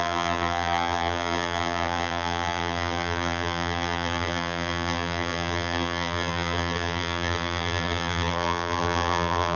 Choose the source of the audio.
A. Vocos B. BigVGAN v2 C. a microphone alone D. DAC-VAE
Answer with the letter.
B